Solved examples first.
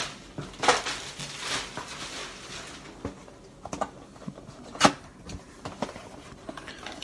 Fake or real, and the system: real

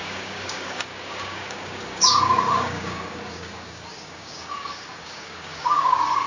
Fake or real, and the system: fake, codec, DAC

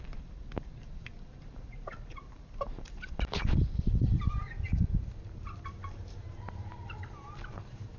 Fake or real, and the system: fake, vocoder, BigVGAN v2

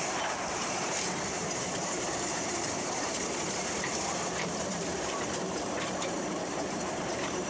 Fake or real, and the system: fake, vocoder, BigVGAN v2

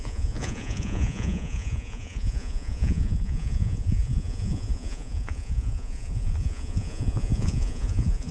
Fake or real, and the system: fake, vocoder, Vocos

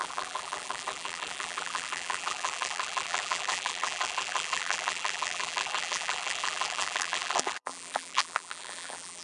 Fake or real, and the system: fake, vocoder, BigVGAN v2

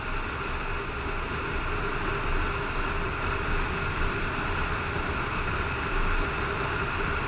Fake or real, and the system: real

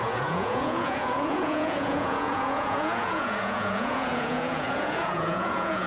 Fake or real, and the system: fake, vocoder, Vocos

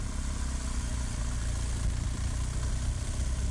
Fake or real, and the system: real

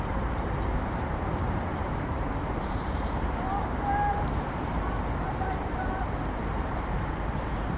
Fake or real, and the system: fake, vocoder, BigVGAN v2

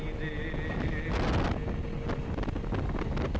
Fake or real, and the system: real